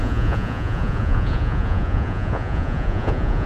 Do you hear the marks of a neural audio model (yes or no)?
yes